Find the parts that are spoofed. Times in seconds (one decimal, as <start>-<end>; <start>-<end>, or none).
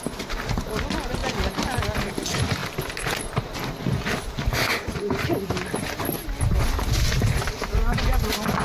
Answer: 4.7-5.4